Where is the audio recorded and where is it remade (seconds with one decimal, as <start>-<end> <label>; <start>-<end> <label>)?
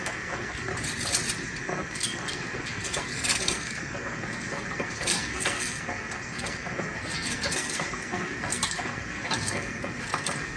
0.0-0.7 remade; 0.7-1.6 recorded; 1.6-10.6 remade